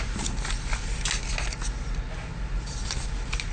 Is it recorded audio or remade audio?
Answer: recorded